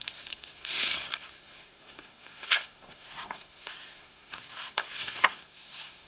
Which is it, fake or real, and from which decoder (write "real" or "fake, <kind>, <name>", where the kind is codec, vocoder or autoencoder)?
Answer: fake, codec, SNAC